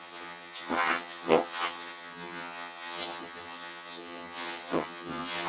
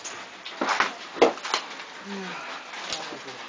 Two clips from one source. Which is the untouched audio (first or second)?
second